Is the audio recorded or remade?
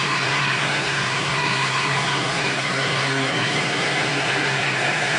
remade